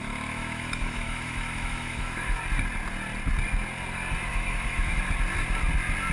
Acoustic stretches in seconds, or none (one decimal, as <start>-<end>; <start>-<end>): 2.4-4.3; 5.1-6.1